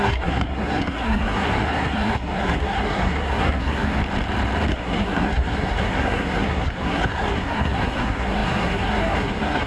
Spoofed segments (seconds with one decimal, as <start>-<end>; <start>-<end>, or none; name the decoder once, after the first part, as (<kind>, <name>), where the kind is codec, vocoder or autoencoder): 0.0-4.0 (codec, SNAC); 4.7-9.7